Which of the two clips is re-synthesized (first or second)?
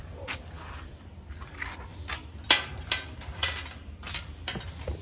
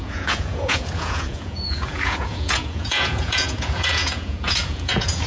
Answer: second